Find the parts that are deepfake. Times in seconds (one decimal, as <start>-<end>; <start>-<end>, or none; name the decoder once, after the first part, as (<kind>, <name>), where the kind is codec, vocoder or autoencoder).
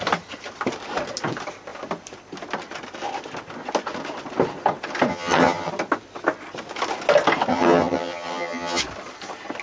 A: 5.1-5.7 (vocoder, HiFi-GAN); 7.5-8.8